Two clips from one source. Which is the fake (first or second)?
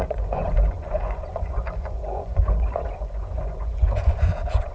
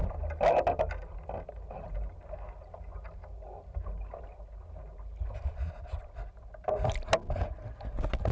first